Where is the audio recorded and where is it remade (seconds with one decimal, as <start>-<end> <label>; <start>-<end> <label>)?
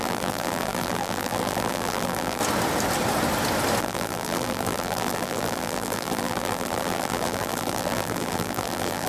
0.0-2.4 remade; 2.4-3.8 recorded; 3.8-9.1 remade